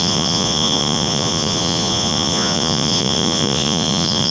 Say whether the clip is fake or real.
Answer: fake